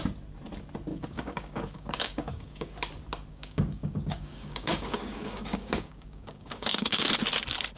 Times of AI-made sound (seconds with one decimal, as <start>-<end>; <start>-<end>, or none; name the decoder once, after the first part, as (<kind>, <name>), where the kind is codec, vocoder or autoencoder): 0.9-2.7 (codec, DAC); 3.3-7.1